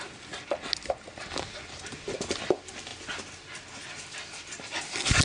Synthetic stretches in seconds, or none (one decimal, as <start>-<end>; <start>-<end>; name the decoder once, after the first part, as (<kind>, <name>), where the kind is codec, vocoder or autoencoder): none